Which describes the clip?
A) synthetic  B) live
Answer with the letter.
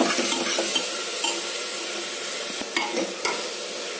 B